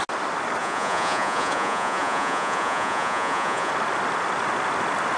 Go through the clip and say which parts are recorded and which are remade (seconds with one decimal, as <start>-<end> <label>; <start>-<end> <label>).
0.0-0.6 recorded; 0.6-3.7 remade; 3.7-5.2 recorded

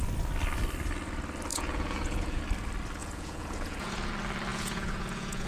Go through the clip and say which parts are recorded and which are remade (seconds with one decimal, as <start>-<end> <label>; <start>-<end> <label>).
0.0-1.5 recorded; 1.5-2.4 remade; 2.4-3.0 recorded; 3.0-4.1 remade; 4.1-4.5 recorded; 4.5-5.5 remade

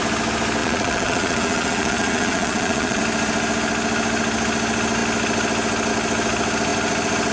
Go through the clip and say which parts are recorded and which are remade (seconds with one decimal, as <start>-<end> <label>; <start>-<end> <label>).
0.0-0.6 recorded; 0.6-3.0 remade; 3.0-7.3 recorded

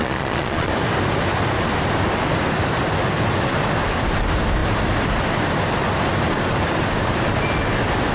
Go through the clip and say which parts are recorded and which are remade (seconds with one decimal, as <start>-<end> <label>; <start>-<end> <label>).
0.0-0.7 remade; 0.7-8.1 recorded

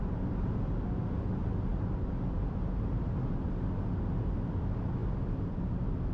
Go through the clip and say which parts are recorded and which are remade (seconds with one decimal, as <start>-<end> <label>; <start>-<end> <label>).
0.0-6.1 recorded